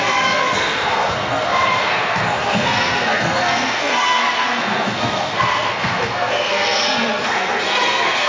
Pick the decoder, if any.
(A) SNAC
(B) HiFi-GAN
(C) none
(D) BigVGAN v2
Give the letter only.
A